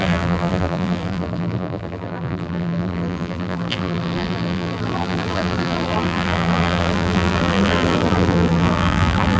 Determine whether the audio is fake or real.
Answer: fake